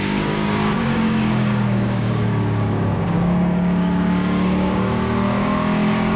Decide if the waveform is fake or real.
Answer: fake